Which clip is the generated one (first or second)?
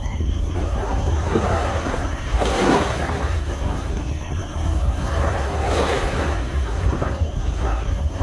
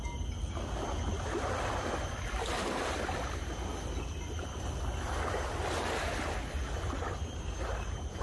first